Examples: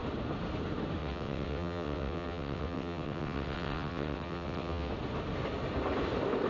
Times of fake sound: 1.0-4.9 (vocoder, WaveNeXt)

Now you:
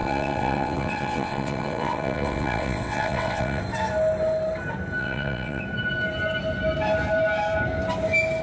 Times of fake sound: 0.0-3.6 (vocoder, WaveNeXt); 5.0-5.6

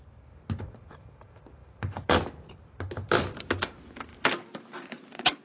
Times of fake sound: none

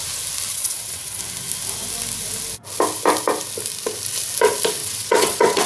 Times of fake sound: 0.5-1.2 (vocoder, WaveNeXt); 4.8-5.7

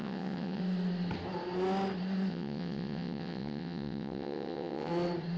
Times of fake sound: 0.0-0.6 (vocoder, WaveNeXt); 2.3-4.9

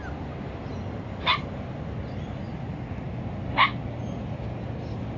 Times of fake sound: none